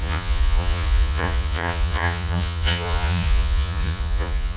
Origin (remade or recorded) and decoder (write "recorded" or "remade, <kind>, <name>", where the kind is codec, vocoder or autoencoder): remade, vocoder, Vocos